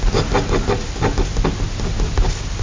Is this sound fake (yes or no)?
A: no